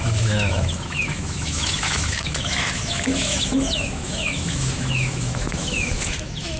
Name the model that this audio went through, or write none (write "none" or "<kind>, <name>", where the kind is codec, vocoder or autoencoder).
autoencoder, DAC-VAE